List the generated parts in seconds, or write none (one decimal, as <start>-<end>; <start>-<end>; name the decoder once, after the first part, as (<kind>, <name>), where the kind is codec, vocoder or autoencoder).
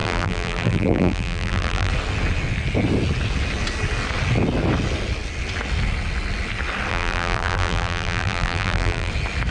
0.0-1.9 (vocoder, BigVGAN v2); 6.9-9.1